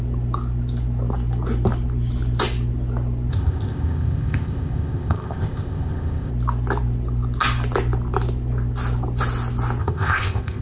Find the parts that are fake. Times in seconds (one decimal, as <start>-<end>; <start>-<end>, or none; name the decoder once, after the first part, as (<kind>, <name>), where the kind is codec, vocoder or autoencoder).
3.3-6.3 (codec, ZipCodec); 9.8-10.6